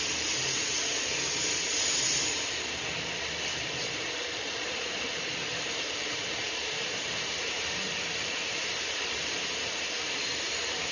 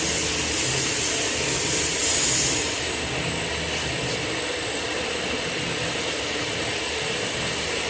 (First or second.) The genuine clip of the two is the second